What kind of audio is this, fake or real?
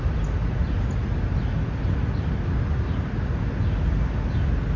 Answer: real